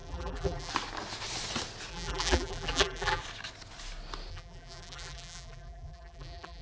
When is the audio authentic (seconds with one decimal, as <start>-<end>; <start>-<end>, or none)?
0.7-1.9; 3.2-4.3